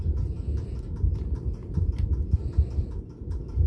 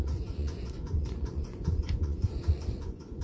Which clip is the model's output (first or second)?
second